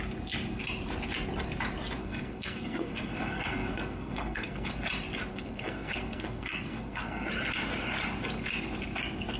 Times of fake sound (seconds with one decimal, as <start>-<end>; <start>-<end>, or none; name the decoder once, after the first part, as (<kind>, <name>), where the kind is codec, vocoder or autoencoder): 2.0-4.7 (codec, SNAC); 5.3-7.3